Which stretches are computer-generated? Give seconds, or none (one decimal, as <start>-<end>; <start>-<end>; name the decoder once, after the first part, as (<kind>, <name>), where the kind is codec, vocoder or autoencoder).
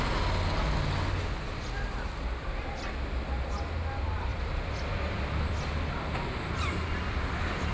none